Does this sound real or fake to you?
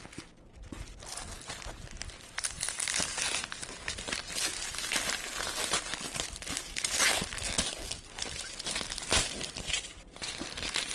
real